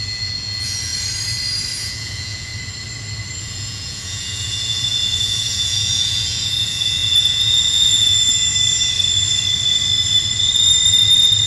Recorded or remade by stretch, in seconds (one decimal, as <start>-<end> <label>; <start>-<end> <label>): 0.0-0.9 remade; 0.9-1.8 recorded; 1.8-2.5 remade; 2.5-3.4 recorded; 3.4-8.5 remade; 8.5-11.5 recorded